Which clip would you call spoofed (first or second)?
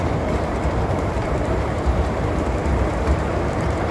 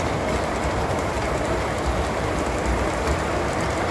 first